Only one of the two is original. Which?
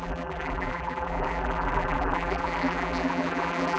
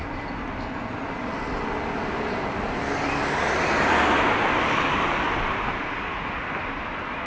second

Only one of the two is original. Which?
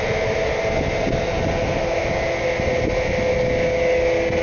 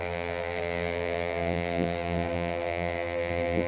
first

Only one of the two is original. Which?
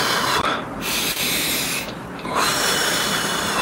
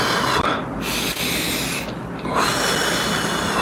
second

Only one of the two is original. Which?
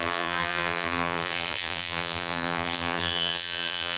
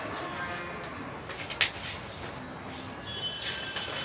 second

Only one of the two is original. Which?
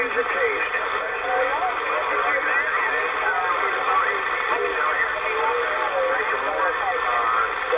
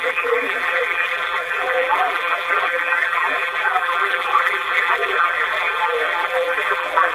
first